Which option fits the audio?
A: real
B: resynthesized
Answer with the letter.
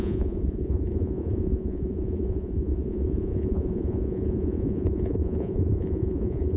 B